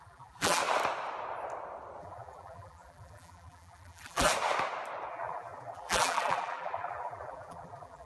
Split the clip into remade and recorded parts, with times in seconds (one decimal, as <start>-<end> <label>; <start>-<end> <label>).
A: 0.0-0.6 remade; 0.6-2.0 recorded; 2.0-4.3 remade; 4.3-5.1 recorded; 5.1-8.1 remade